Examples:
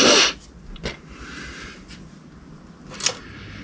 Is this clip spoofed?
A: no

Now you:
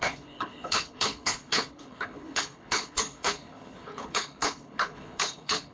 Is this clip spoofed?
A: yes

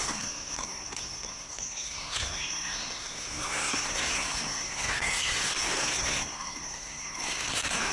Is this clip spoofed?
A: yes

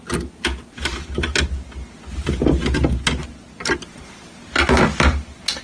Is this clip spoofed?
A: no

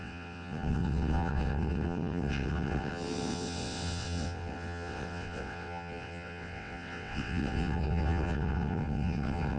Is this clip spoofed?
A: yes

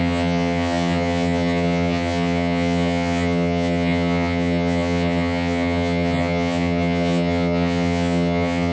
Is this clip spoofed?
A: yes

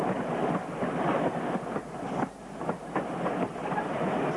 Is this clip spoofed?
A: no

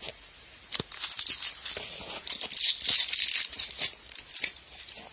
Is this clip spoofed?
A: no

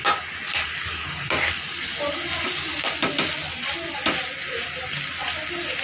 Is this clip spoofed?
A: no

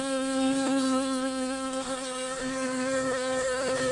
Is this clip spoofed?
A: yes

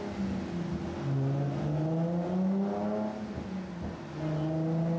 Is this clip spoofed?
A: no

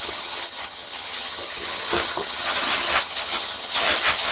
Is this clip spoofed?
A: yes